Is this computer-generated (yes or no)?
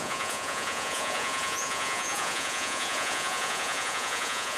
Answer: yes